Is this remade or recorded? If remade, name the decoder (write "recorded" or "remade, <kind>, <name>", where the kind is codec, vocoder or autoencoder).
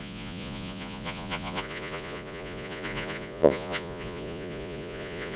remade, vocoder, Vocos